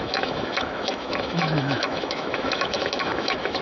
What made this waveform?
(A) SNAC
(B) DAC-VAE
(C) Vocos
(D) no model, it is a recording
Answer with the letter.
B